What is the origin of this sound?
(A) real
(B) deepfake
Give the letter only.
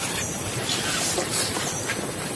A